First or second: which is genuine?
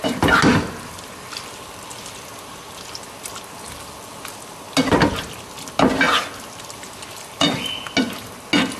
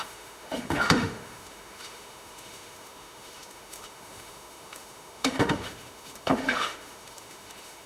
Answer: first